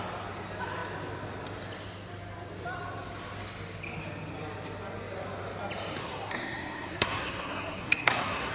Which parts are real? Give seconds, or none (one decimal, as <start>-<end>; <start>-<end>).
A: 0.0-6.0